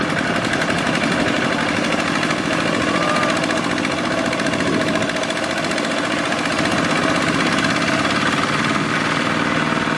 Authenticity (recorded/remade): recorded